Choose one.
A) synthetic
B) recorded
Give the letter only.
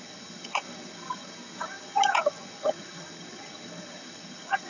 A